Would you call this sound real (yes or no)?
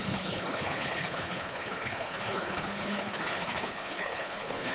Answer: no